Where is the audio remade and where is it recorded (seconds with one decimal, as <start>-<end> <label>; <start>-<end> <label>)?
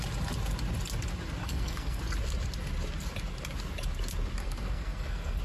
0.0-1.4 recorded; 1.4-2.0 remade; 2.0-4.4 recorded; 4.4-5.4 remade